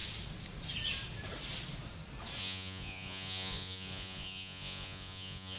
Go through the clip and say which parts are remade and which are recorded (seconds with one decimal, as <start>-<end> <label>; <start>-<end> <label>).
0.0-2.4 recorded; 2.4-5.6 remade